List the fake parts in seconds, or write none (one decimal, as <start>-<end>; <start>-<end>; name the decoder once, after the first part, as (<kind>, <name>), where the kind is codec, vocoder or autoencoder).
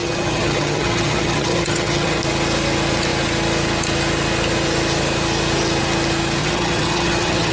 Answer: 0.0-2.2 (vocoder, HiFi-GAN); 6.4-7.5